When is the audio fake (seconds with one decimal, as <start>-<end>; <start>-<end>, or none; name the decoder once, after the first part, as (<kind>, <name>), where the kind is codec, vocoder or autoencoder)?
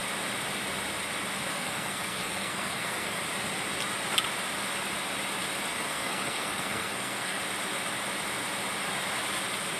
1.5-3.2 (codec, SNAC); 5.7-7.4